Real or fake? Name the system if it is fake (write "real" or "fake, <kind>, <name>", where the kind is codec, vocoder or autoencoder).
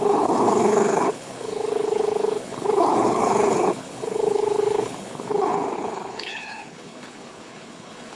fake, codec, HILCodec